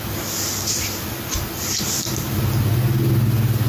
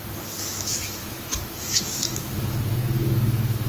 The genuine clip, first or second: first